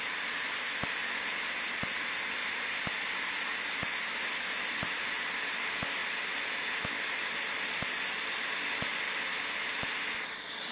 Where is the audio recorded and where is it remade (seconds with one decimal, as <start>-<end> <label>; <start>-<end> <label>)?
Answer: 0.0-10.7 recorded